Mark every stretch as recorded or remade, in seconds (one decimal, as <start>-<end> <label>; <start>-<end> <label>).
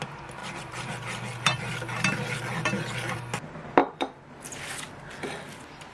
0.0-0.4 recorded; 0.4-3.2 remade; 3.2-3.8 recorded; 3.8-4.3 remade; 4.3-5.9 recorded